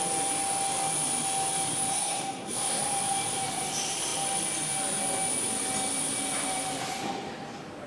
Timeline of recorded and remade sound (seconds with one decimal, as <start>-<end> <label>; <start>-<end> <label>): 0.0-1.9 recorded; 1.9-2.8 remade; 2.8-7.9 recorded